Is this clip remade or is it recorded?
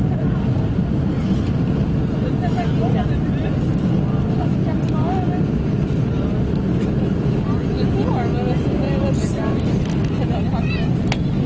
recorded